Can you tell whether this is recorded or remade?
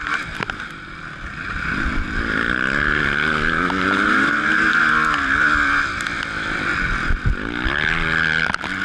recorded